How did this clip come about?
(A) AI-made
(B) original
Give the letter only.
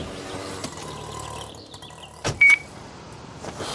A